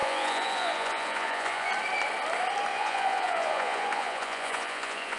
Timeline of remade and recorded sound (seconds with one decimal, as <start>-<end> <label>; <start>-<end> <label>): 0.0-1.7 remade; 1.7-2.7 recorded; 2.7-5.2 remade